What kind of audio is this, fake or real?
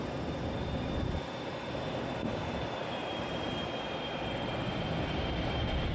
real